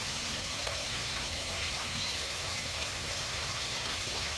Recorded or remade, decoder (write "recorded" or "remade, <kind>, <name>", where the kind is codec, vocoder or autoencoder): remade, codec, SNAC